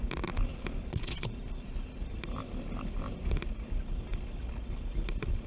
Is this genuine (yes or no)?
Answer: yes